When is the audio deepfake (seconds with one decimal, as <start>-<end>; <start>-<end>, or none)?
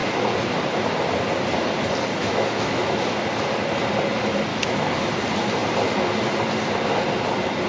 2.2-3.1; 4.5-5.1